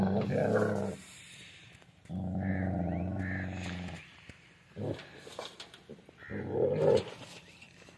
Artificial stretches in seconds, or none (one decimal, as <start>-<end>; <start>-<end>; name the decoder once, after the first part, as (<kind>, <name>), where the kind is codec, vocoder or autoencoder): 2.5-3.2 (vocoder, BigVGAN v2)